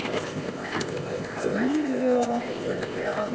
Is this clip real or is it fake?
fake